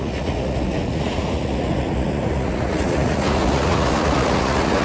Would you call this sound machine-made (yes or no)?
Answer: yes